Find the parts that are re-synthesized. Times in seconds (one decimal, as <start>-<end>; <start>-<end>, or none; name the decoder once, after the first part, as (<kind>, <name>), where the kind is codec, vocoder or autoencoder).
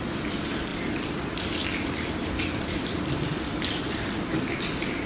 0.7-3.8 (vocoder, BigVGAN v2)